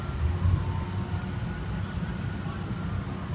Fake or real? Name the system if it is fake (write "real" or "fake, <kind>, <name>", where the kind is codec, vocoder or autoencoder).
real